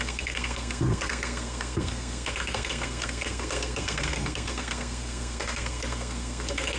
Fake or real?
fake